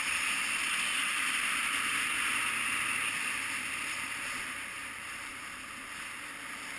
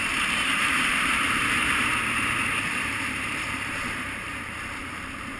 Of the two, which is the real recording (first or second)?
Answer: first